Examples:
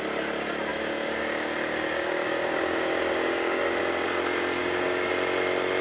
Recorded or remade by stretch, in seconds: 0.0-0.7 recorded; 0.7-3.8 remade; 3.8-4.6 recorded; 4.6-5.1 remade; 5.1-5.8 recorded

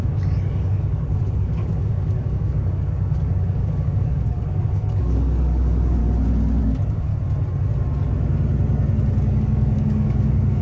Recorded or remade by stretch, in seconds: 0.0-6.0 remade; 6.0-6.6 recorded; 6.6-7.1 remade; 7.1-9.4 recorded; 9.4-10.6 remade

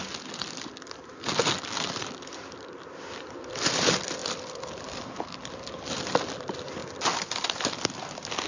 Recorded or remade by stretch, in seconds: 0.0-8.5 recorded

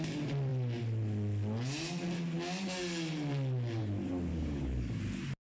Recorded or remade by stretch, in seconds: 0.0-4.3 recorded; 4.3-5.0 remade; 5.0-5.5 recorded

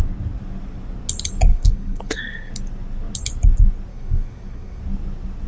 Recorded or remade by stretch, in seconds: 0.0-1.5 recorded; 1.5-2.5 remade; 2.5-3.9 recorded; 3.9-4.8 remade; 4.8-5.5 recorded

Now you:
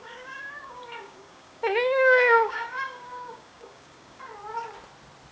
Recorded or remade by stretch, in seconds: 0.0-4.3 remade; 4.3-5.3 recorded